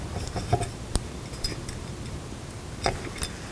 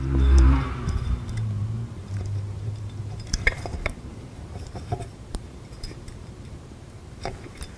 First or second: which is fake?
second